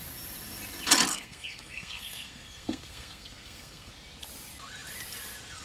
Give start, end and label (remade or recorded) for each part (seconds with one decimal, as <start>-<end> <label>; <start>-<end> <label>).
0.0-1.1 recorded; 1.1-3.9 remade; 3.9-5.6 recorded